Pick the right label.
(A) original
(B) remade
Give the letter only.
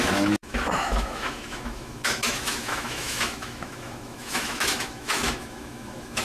B